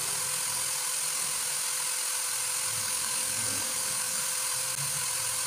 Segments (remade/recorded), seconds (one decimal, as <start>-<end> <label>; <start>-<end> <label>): 0.0-2.8 recorded; 2.8-4.2 remade; 4.2-5.5 recorded